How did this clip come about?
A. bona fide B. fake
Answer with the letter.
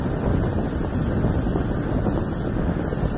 A